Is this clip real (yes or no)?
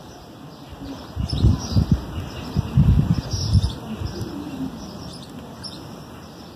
yes